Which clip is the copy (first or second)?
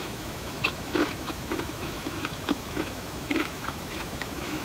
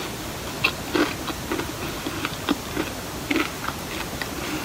first